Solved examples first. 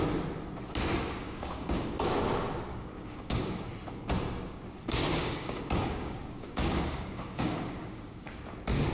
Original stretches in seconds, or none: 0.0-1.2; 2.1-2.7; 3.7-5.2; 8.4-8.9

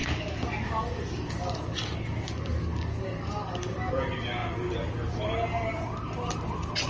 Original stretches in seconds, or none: 3.9-6.9

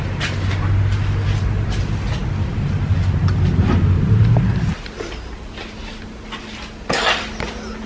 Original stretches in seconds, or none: 0.0-7.9

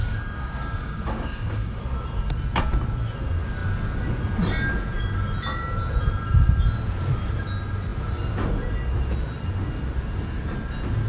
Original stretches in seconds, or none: 1.8-11.1

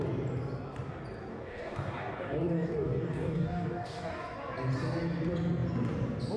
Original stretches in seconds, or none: 0.0-1.3; 4.2-6.4

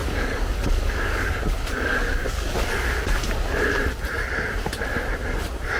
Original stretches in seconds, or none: 3.2-5.8

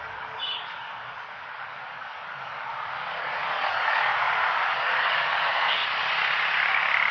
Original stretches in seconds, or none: 2.7-3.2; 4.0-4.5; 5.8-7.1